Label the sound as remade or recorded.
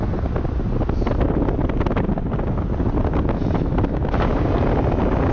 recorded